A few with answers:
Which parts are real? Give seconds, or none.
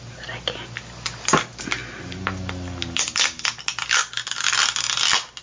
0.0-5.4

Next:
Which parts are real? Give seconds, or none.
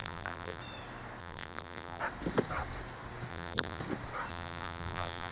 0.6-1.2; 2.0-3.3; 3.8-4.3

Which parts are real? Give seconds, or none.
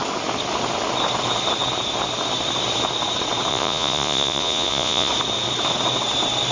0.0-3.5; 5.1-6.5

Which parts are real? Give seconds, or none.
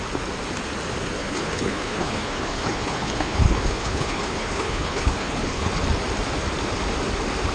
0.0-1.2; 5.7-7.5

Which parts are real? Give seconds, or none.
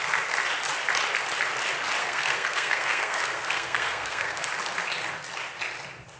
0.0-2.0; 4.5-6.2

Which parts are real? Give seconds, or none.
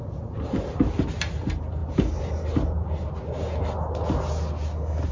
0.0-5.1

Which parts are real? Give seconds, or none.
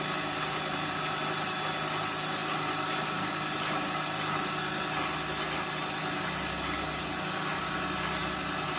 0.0-8.8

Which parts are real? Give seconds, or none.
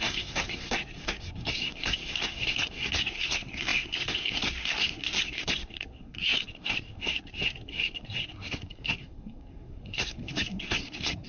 none